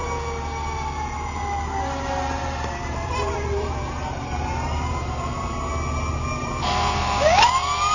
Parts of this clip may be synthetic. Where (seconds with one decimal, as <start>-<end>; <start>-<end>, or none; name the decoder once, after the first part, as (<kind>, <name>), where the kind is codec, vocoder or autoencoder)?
2.4-5.7 (vocoder, BigVGAN v2); 6.4-7.5